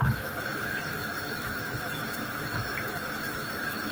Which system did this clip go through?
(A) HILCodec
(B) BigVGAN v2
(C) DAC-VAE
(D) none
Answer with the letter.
C